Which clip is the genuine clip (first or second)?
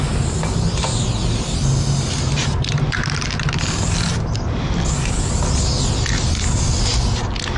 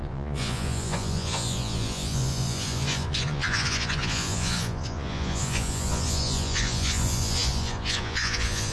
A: first